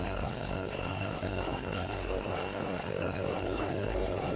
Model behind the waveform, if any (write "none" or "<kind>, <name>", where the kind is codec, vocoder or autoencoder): codec, SNAC